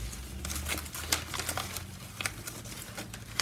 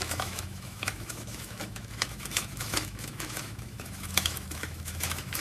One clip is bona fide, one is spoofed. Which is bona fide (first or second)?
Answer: first